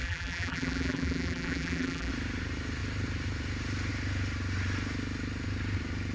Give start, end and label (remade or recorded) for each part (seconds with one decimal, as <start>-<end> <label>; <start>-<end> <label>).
0.0-2.1 remade; 2.1-6.1 recorded

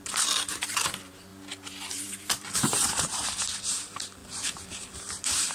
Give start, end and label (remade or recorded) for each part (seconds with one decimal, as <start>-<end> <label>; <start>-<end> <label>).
0.0-1.3 remade; 1.3-1.9 recorded; 1.9-5.5 remade

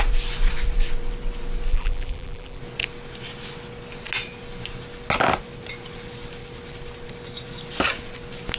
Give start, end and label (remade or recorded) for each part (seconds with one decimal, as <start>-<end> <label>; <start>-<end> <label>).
0.0-1.7 recorded; 1.7-2.6 remade; 2.6-8.6 recorded

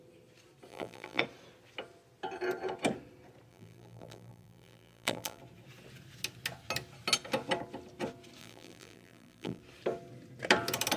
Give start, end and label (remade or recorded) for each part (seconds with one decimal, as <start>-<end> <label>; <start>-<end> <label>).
0.0-0.7 recorded; 0.7-1.2 remade; 1.2-3.5 recorded; 3.5-5.4 remade; 5.4-8.4 recorded; 8.4-9.6 remade; 9.6-11.0 recorded

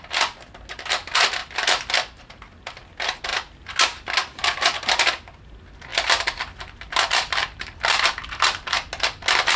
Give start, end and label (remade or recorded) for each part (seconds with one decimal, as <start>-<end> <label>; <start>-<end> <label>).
0.0-5.9 recorded; 5.9-8.0 remade; 8.0-9.6 recorded